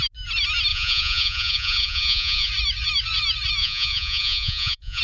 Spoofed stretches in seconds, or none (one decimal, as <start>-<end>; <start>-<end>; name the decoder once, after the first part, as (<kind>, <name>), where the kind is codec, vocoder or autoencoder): 0.7-2.5 (vocoder, Vocos); 3.6-5.0